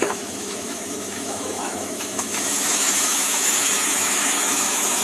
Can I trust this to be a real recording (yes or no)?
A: no